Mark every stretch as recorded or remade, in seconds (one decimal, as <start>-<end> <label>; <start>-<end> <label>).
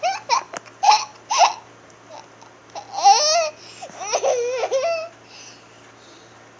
0.0-6.6 recorded